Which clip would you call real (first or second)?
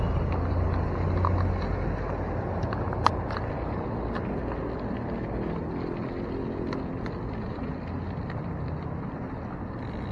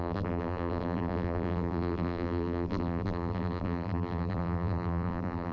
first